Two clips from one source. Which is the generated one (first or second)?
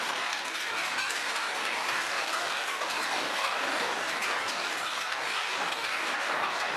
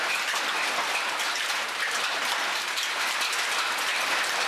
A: first